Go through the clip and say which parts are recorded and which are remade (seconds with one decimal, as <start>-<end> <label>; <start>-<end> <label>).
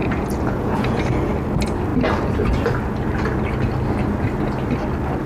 0.0-1.0 remade; 1.0-5.3 recorded